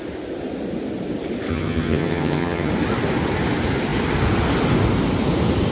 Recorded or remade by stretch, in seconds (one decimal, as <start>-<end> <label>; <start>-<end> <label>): 0.0-1.5 recorded; 1.5-2.7 remade; 2.7-5.7 recorded